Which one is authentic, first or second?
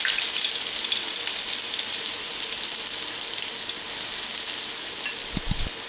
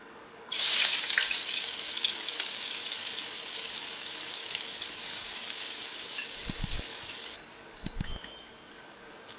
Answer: first